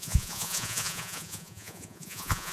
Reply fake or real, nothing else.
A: fake